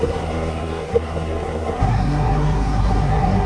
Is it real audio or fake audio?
fake